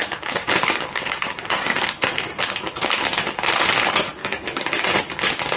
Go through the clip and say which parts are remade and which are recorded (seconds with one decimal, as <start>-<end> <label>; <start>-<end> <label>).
0.0-1.8 remade; 1.8-4.2 recorded; 4.2-5.0 remade; 5.0-5.6 recorded

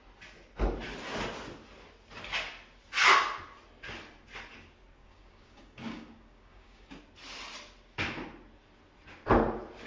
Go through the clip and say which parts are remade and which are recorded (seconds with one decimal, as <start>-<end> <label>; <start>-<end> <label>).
0.0-5.0 recorded; 5.0-7.0 remade; 7.0-9.9 recorded

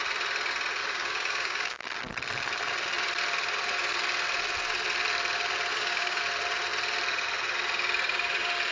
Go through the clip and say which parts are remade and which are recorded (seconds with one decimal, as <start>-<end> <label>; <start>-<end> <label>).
0.0-0.8 recorded; 0.8-2.0 remade; 2.0-5.7 recorded; 5.7-6.2 remade; 6.2-8.7 recorded

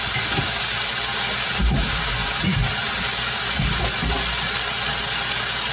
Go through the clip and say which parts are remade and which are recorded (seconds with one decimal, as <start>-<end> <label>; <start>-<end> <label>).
0.0-5.7 recorded

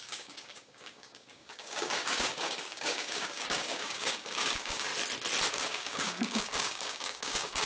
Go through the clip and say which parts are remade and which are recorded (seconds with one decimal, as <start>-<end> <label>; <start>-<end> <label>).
0.0-4.9 remade; 4.9-5.5 recorded; 5.5-7.7 remade

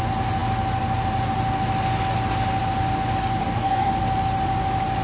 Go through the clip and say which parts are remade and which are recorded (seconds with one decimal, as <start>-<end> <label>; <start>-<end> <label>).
0.0-3.4 recorded; 3.4-3.9 remade; 3.9-5.0 recorded

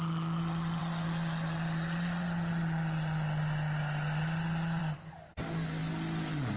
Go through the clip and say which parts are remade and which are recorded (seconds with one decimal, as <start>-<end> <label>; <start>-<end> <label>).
0.0-6.6 recorded